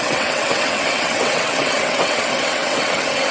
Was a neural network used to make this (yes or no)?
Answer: yes